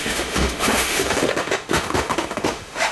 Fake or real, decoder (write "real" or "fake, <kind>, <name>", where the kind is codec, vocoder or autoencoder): fake, autoencoder, DAC-VAE